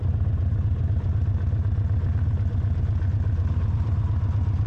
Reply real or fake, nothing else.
real